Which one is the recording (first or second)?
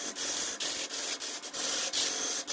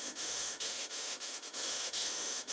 first